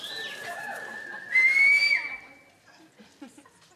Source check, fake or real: real